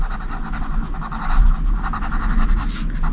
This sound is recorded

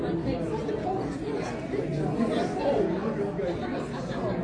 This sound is recorded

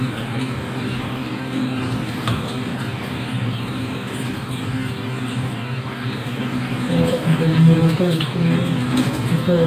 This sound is remade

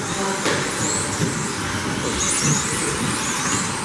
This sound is recorded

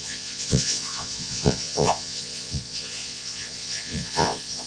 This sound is remade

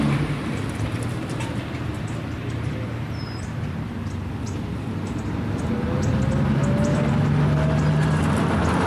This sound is remade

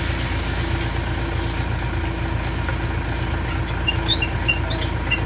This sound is recorded